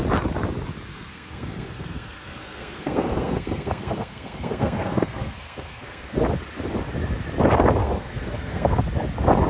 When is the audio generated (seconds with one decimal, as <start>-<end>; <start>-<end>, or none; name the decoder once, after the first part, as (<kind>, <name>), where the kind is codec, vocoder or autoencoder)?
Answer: 0.9-6.1 (codec, SNAC); 7.8-8.8